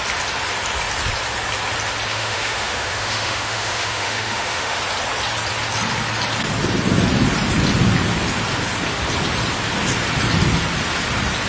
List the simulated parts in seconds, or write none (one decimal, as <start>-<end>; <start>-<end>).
2.1-4.8